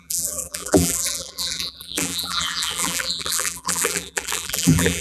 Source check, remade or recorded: remade